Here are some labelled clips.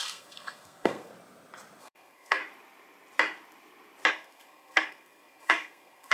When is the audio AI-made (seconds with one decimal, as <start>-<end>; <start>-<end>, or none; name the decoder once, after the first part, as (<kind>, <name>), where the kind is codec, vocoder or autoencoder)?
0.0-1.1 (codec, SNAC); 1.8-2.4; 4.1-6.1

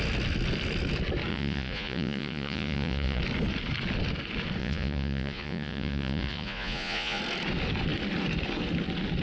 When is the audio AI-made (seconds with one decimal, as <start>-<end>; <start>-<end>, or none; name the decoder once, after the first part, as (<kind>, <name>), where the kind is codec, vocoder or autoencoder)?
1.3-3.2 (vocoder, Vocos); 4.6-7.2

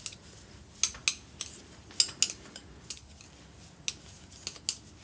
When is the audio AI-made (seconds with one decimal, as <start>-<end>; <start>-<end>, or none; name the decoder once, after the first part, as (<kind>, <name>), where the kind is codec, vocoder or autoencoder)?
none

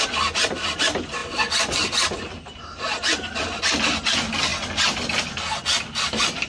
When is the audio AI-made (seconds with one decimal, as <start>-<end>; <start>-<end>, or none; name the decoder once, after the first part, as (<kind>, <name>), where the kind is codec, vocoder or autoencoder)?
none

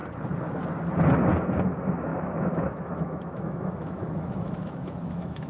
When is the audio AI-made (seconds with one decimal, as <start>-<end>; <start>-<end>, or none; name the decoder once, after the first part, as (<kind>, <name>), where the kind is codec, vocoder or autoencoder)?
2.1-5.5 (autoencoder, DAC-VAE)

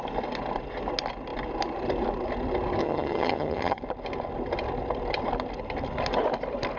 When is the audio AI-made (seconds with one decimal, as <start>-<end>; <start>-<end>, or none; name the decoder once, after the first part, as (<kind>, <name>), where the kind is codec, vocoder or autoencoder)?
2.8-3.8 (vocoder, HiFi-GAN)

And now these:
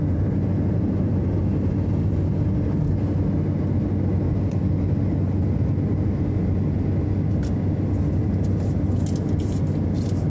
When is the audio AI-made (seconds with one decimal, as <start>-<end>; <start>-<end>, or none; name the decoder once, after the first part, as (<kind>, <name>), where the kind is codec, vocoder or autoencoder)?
none

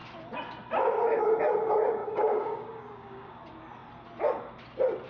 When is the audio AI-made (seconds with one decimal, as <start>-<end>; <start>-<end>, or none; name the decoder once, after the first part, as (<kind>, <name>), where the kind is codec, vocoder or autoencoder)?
2.0-3.4 (codec, DAC)